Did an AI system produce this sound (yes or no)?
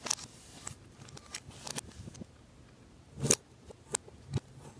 no